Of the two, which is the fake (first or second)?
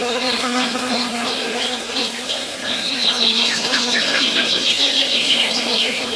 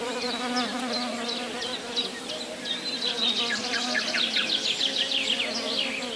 first